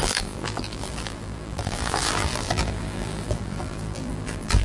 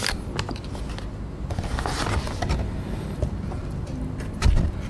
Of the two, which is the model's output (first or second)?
first